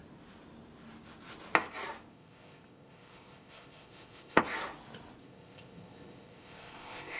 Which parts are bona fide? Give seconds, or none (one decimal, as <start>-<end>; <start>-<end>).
0.0-2.1; 4.4-5.2